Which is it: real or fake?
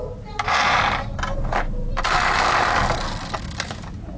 real